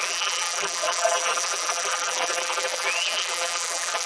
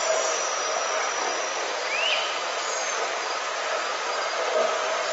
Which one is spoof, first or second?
first